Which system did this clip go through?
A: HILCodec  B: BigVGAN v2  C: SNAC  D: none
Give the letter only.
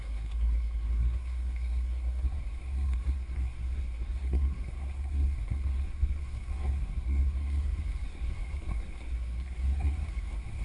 C